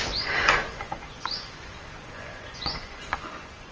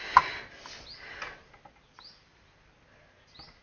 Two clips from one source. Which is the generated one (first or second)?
first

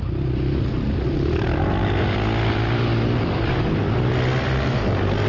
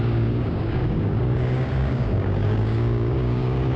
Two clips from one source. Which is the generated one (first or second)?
second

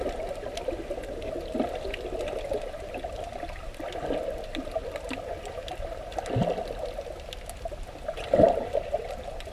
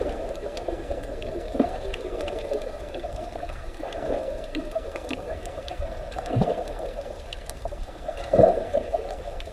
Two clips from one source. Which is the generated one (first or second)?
second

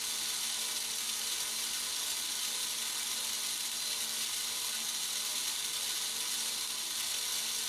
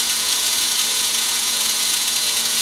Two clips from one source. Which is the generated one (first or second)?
second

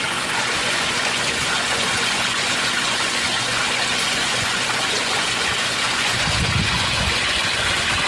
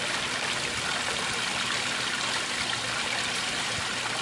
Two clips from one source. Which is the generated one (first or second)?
first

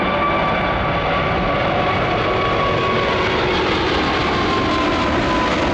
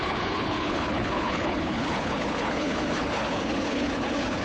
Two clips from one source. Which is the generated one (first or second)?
second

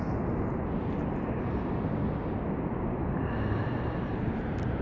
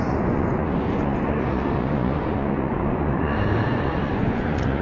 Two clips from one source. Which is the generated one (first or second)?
second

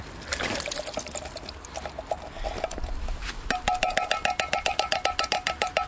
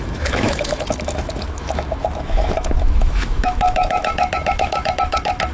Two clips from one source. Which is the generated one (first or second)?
second